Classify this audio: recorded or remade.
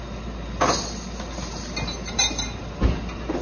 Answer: recorded